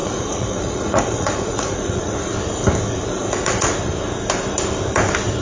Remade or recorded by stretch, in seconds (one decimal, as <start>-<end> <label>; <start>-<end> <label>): 0.0-2.3 remade; 2.3-3.1 recorded; 3.1-3.7 remade; 3.7-5.4 recorded